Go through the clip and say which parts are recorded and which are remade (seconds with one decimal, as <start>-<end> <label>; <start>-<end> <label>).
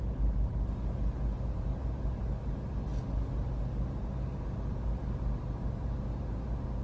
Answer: 0.0-2.9 remade; 2.9-4.0 recorded; 4.0-6.8 remade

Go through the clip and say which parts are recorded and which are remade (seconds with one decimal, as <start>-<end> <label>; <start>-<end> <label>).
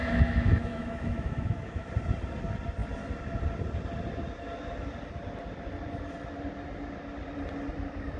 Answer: 0.0-1.9 remade; 1.9-8.2 recorded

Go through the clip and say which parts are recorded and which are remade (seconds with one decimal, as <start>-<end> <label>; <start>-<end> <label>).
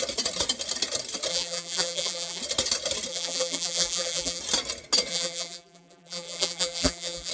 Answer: 0.0-1.3 recorded; 1.3-2.4 remade; 2.4-3.1 recorded; 3.1-4.4 remade; 4.4-5.1 recorded; 5.1-7.3 remade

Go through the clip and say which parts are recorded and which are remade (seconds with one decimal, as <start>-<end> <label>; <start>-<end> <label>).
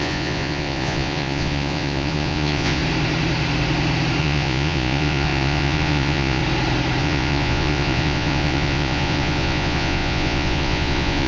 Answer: 0.0-2.8 remade; 2.8-4.2 recorded; 4.2-6.4 remade; 6.4-7.0 recorded; 7.0-11.3 remade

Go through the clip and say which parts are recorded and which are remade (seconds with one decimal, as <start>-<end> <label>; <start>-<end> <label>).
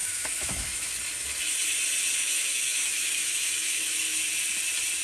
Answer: 0.0-0.9 remade; 0.9-2.2 recorded; 2.2-4.2 remade; 4.2-5.0 recorded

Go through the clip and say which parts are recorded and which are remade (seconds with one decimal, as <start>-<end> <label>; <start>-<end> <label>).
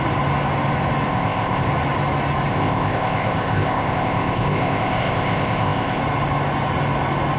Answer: 0.0-1.1 recorded; 1.1-1.7 remade; 1.7-2.5 recorded; 2.5-6.0 remade; 6.0-7.4 recorded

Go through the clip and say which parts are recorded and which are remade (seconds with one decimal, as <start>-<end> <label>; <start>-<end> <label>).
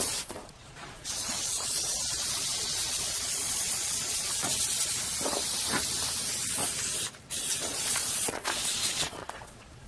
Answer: 0.0-4.5 remade; 4.5-7.4 recorded; 7.4-9.9 remade